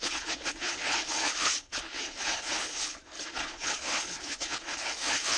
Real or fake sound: fake